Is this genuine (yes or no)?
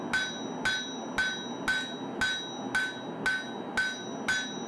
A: yes